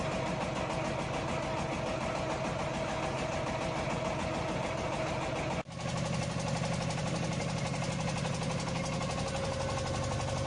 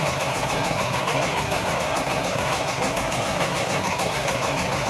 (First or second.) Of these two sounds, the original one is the first